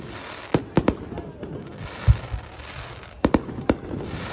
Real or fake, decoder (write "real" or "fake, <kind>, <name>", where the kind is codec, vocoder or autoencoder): fake, vocoder, BigVGAN v2